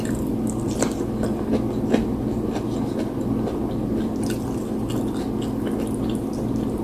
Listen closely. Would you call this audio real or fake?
real